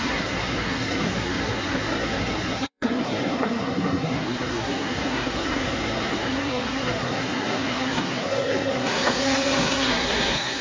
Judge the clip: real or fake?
fake